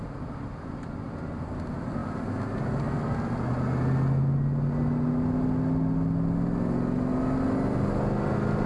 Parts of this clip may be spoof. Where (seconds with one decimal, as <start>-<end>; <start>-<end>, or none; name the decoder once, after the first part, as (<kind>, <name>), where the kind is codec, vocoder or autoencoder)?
none